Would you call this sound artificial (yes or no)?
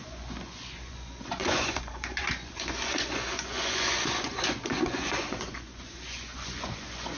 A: yes